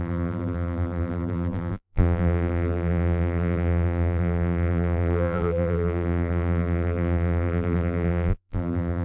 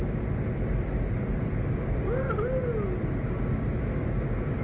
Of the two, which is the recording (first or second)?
second